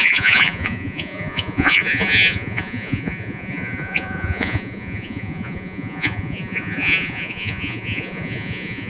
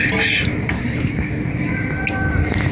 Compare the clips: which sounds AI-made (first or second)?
first